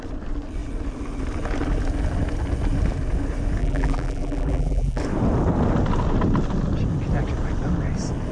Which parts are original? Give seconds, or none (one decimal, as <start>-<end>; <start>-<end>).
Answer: 0.0-3.6; 5.0-8.3